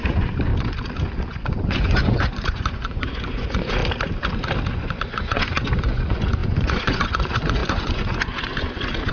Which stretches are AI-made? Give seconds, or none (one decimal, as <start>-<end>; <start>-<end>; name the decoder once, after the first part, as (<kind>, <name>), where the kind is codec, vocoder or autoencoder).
0.0-0.5 (vocoder, Vocos); 1.2-3.8; 4.7-9.1